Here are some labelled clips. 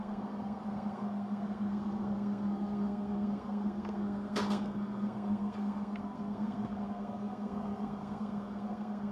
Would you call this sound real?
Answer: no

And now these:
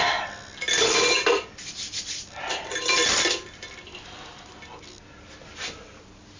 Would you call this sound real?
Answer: yes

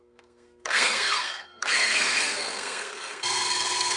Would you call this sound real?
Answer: no